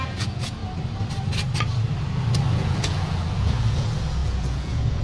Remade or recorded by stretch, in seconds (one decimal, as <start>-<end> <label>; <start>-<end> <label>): 0.0-0.6 remade; 0.6-2.5 recorded; 2.5-5.0 remade